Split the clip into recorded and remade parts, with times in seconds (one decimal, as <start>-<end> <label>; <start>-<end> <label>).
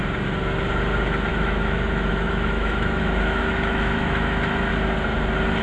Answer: 0.0-1.3 recorded; 1.3-4.7 remade; 4.7-5.6 recorded